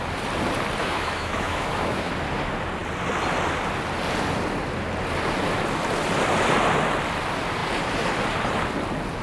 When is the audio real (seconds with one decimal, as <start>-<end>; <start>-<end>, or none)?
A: 0.0-0.8; 2.1-9.2